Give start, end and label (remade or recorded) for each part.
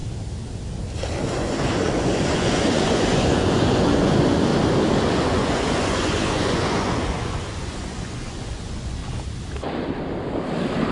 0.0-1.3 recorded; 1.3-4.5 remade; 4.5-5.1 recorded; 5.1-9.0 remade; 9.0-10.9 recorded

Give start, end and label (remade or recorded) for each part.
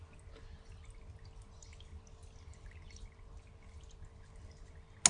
0.0-5.1 recorded